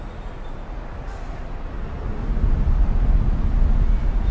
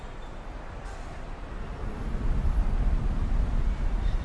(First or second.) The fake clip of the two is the second